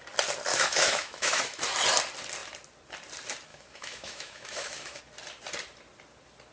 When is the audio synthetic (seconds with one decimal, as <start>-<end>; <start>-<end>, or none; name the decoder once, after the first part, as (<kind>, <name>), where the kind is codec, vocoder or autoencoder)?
0.5-1.6 (autoencoder, DAC-VAE); 3.5-5.0